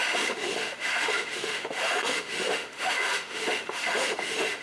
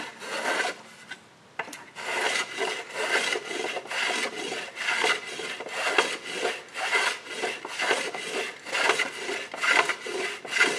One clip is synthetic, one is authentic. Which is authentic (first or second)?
second